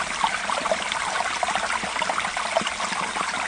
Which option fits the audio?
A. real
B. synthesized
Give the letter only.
A